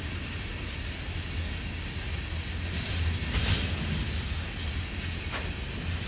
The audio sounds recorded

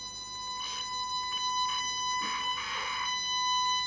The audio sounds recorded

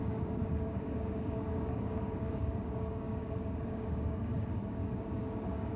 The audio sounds remade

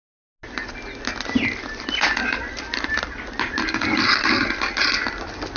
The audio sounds recorded